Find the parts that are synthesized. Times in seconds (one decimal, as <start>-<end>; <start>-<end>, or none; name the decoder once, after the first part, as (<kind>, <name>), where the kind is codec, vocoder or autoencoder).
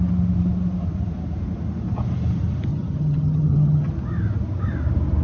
2.7-3.9 (vocoder, HiFi-GAN)